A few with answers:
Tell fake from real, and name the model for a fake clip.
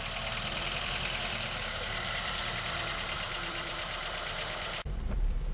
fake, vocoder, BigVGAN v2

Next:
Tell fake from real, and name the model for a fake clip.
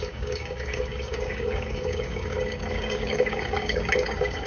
fake, codec, DAC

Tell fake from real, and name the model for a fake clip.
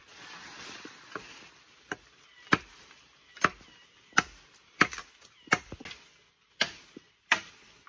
real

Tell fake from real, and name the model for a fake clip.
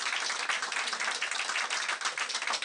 real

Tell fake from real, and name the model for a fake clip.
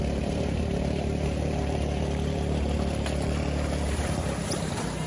fake, vocoder, BigVGAN v2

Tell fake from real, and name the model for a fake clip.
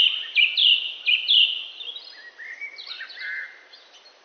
real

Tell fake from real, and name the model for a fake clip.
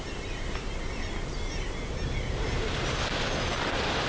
real